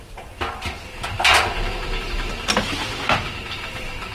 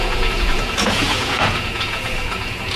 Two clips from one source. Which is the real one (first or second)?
first